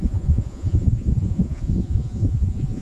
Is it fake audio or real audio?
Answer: fake